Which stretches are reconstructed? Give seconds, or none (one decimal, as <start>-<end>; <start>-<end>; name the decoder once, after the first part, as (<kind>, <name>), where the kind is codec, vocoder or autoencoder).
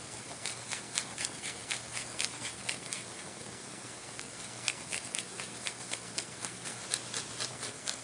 0.0-6.8 (codec, SNAC); 7.5-8.0